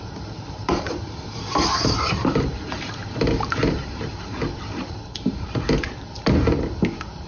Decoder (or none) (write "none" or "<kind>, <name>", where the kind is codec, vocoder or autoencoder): vocoder, BigVGAN v2